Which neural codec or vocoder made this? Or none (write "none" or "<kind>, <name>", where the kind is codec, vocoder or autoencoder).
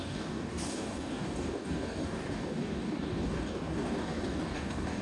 codec, DAC